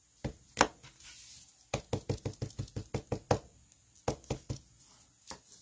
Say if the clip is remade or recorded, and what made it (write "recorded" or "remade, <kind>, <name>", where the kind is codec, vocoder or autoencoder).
recorded